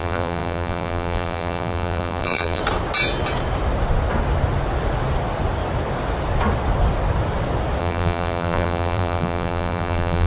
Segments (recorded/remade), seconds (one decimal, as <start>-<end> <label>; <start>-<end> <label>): 0.0-2.6 remade; 2.6-7.8 recorded; 7.8-10.3 remade